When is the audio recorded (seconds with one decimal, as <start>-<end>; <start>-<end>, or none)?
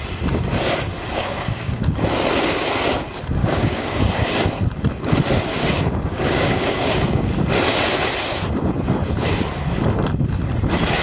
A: 0.0-1.1; 2.0-3.4; 4.0-5.5; 7.3-11.0